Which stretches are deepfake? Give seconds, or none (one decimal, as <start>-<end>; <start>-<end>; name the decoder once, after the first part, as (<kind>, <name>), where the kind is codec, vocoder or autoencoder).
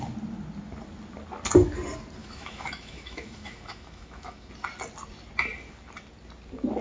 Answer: 2.2-4.5 (autoencoder, DAC-VAE)